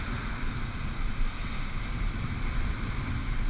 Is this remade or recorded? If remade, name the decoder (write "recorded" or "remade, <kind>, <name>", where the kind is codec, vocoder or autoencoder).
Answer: recorded